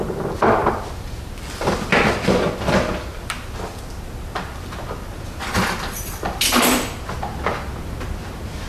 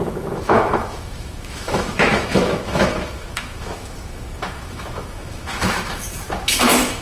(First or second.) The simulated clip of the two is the second